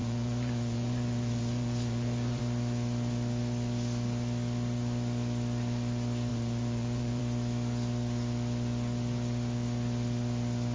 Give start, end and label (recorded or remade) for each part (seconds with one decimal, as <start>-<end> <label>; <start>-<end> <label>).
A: 0.0-2.4 remade; 2.4-6.3 recorded; 6.3-7.2 remade; 7.2-10.7 recorded